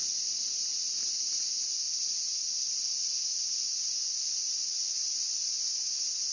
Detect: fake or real real